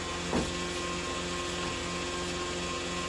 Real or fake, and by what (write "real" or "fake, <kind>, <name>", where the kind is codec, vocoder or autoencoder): real